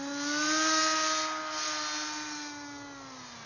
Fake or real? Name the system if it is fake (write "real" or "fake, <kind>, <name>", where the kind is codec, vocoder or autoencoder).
real